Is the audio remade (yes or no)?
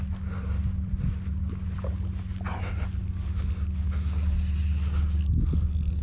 no